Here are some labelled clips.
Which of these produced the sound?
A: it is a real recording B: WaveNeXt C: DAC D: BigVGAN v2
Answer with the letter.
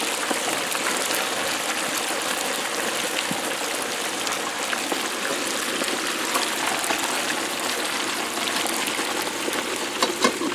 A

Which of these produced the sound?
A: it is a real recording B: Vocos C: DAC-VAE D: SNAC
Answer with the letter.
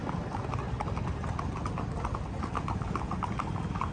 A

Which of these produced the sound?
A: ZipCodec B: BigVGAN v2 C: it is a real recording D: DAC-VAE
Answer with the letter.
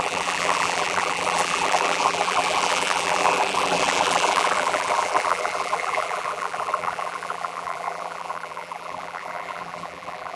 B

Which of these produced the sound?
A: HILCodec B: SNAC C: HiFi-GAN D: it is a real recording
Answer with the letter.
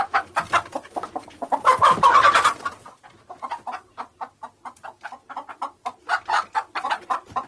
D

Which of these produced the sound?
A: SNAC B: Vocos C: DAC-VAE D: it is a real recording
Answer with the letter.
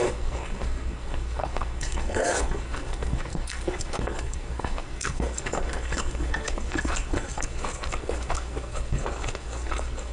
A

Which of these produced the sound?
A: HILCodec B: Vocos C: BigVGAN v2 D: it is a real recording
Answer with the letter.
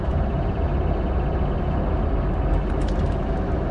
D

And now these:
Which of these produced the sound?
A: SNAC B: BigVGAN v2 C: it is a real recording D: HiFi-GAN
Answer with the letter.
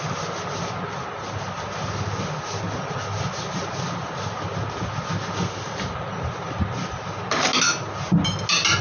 C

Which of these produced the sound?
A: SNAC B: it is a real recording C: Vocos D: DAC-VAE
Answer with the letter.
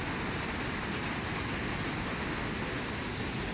B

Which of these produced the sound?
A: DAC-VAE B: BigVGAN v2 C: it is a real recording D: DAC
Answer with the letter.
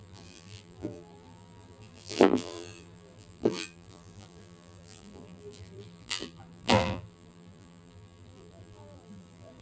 B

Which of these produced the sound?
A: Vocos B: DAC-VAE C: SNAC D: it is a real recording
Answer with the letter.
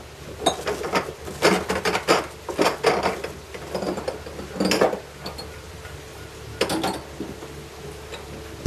D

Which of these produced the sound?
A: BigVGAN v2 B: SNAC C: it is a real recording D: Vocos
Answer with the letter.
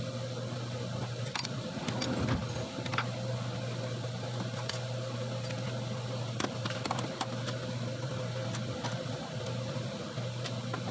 C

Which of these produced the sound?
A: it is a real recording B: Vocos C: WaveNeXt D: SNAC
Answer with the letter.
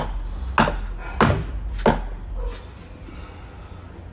A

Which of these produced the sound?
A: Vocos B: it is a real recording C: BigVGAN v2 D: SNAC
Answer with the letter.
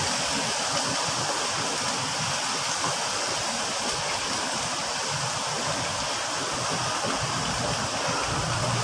C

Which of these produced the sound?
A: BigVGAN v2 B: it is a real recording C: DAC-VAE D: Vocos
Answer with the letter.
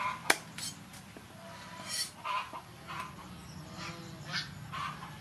B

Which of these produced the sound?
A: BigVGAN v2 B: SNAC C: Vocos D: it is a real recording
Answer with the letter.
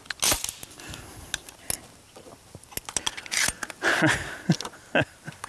D